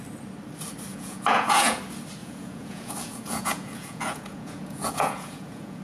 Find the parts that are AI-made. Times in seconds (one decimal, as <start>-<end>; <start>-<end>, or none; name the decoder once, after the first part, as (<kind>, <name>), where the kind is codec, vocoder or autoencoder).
0.9-1.8 (vocoder, Vocos); 2.2-5.8